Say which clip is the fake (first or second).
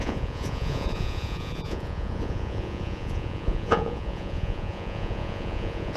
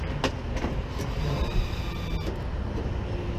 first